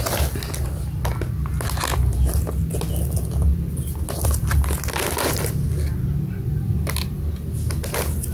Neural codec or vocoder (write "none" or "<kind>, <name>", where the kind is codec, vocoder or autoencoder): none